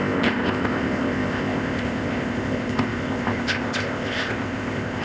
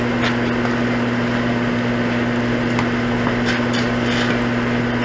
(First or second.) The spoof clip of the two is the first